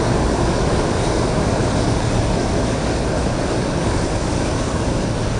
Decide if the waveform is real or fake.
fake